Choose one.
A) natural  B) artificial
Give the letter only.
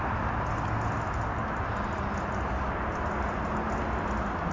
A